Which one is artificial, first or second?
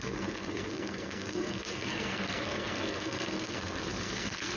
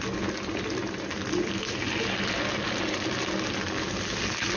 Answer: first